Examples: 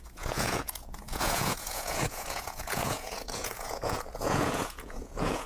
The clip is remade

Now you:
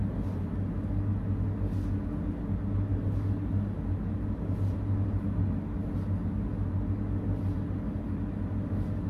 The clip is recorded